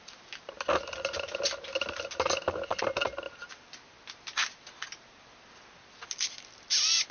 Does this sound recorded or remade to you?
recorded